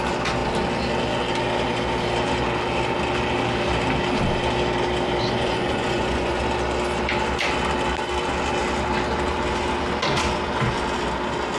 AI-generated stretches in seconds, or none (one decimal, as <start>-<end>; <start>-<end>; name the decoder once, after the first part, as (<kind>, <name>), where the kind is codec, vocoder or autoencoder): 5.2-6.4 (vocoder, Vocos)